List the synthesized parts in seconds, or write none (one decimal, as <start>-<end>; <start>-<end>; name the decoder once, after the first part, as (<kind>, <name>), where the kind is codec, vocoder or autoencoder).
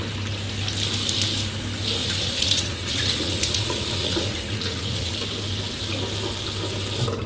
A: 2.0-5.1 (vocoder, Vocos)